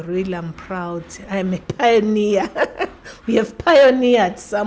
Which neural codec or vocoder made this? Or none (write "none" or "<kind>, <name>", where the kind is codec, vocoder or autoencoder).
none